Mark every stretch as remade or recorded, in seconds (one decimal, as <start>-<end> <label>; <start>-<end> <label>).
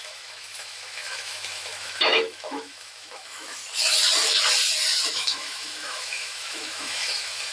0.0-3.6 remade; 3.6-5.1 recorded; 5.1-7.5 remade